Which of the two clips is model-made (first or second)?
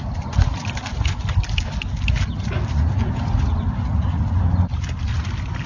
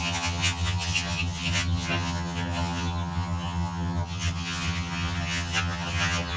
second